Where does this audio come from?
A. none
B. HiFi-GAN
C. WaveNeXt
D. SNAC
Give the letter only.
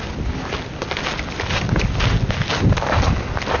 A